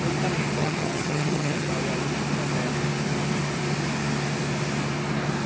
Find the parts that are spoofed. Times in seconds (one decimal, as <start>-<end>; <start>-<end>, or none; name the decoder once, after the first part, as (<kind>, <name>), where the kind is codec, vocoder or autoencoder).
0.6-1.7 (vocoder, HiFi-GAN)